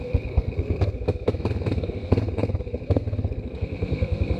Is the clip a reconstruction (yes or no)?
yes